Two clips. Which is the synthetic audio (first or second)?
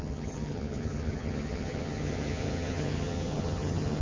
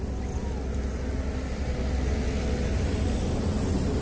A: first